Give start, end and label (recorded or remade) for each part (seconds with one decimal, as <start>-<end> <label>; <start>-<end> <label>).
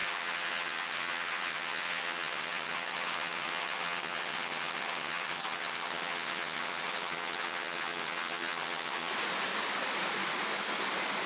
0.0-9.1 remade; 9.1-11.3 recorded